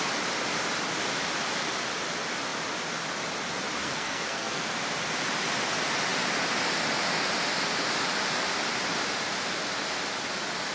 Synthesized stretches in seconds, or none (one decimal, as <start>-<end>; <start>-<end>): 3.8-4.7